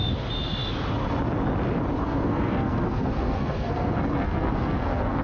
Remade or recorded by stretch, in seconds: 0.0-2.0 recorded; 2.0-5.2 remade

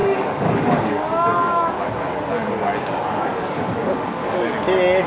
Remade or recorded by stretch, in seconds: 0.0-1.7 remade; 1.7-3.3 recorded; 3.3-4.5 remade; 4.5-5.1 recorded